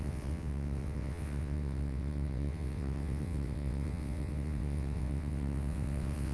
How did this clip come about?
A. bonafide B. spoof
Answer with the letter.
B